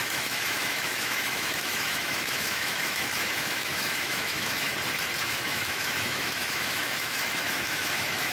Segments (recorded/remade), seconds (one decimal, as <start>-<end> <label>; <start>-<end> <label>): 0.0-4.7 remade; 4.7-5.2 recorded; 5.2-8.3 remade